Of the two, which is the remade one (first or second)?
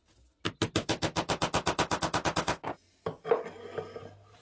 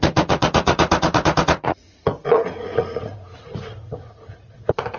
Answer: second